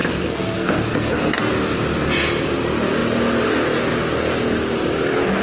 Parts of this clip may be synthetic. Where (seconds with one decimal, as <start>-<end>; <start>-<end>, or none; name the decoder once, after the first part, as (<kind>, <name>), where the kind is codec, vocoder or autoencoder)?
0.0-1.5 (codec, SNAC)